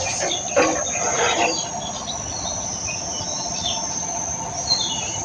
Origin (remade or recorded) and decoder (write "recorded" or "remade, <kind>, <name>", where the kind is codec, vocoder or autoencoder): recorded